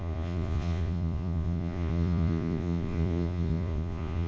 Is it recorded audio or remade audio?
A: remade